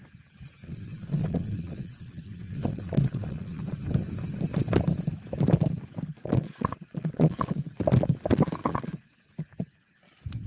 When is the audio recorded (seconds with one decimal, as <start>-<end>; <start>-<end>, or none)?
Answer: 0.0-0.6; 3.6-6.1; 7.8-8.6; 9.2-10.5